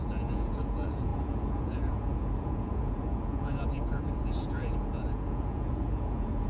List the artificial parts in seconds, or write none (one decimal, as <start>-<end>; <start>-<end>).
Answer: 0.0-6.5